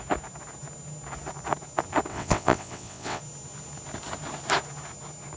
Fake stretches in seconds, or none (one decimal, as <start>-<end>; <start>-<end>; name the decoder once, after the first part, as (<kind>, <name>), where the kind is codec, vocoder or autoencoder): 2.1-3.2 (vocoder, WaveNeXt)